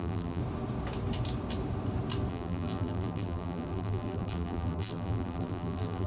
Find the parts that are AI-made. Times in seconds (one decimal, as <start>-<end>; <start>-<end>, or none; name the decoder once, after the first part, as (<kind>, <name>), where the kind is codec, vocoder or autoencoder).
0.0-0.4 (vocoder, BigVGAN v2); 2.3-6.1